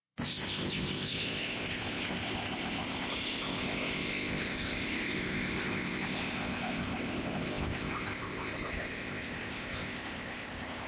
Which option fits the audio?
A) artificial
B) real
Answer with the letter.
A